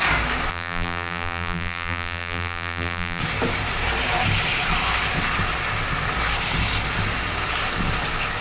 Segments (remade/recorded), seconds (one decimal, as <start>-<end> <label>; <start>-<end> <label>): 0.0-0.5 recorded; 0.5-3.2 remade; 3.2-8.4 recorded